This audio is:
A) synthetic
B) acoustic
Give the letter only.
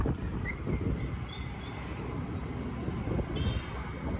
B